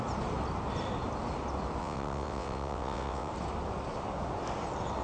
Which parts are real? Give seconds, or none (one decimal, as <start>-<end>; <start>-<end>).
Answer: 0.0-1.8; 3.3-5.0